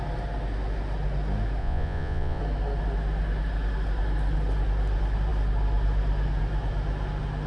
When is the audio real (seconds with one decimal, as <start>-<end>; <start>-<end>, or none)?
0.0-1.6; 2.4-7.5